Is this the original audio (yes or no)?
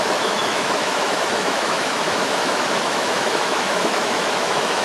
no